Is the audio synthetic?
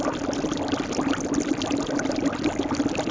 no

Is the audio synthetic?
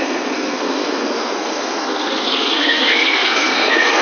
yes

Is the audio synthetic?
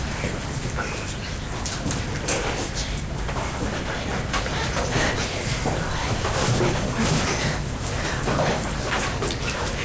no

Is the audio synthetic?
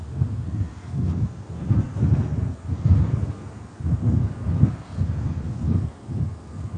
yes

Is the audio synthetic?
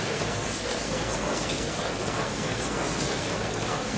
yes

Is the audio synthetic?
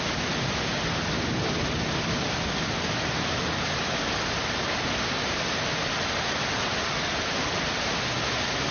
no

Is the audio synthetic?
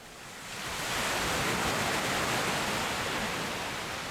no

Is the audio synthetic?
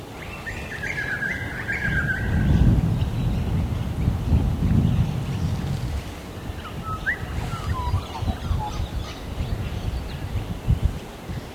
no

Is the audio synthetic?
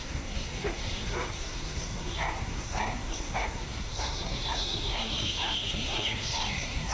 yes